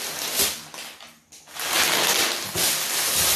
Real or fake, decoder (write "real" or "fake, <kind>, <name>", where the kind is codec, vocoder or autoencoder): real